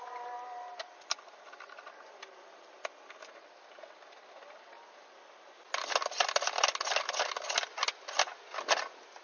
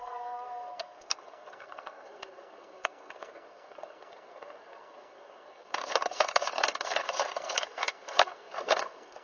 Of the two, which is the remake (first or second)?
second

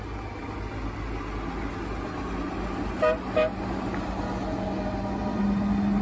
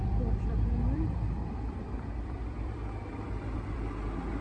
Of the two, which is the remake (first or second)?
second